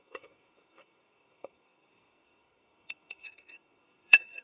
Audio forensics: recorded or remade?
remade